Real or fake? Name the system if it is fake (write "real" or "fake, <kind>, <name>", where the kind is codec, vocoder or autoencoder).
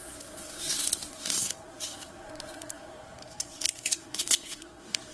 fake, codec, SNAC